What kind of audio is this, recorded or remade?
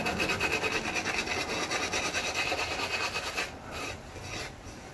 recorded